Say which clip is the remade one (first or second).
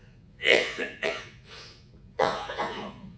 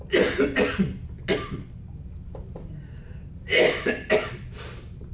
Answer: first